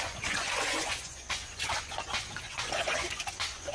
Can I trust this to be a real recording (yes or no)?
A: no